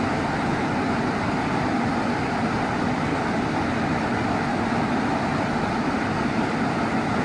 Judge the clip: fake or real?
real